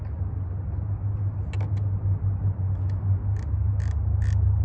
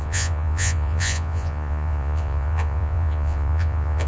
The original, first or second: first